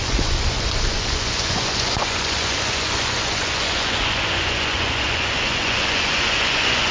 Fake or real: fake